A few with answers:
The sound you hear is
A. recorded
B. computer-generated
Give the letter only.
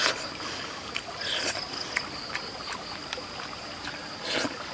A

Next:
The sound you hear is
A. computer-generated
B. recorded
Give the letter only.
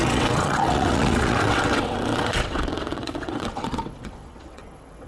A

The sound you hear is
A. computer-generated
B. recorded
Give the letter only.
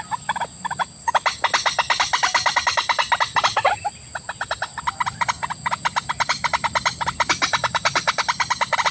B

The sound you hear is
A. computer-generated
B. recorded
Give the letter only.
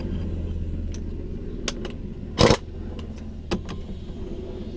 B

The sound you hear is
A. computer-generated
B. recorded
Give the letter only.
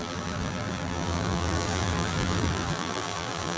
A